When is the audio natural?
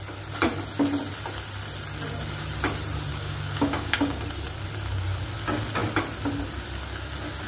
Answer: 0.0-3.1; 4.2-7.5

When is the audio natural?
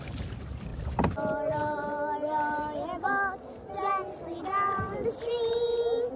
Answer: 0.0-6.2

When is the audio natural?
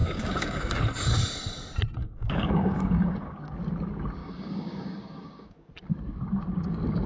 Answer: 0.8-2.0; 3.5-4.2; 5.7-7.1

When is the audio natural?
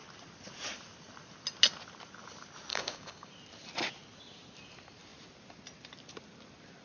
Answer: 0.0-2.7; 3.3-6.8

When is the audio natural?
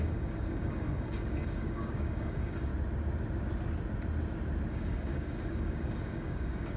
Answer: 2.7-4.7